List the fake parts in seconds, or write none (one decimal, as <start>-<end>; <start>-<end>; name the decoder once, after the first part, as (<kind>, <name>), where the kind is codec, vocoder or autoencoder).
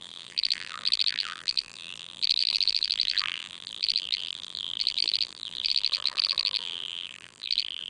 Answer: 0.0-7.9 (vocoder, BigVGAN v2)